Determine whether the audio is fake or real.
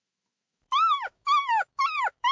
fake